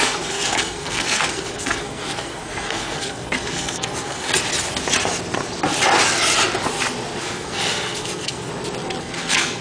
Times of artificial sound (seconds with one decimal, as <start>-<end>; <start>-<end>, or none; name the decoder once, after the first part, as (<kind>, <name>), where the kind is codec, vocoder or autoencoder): 0.0-4.3 (codec, SNAC); 7.2-8.5; 9.0-9.6